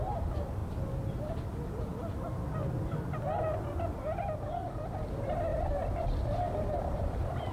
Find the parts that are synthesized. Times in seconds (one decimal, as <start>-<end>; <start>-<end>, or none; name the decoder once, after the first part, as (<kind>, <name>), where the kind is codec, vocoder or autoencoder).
0.6-1.2 (vocoder, BigVGAN v2); 1.9-3.6; 5.5-7.5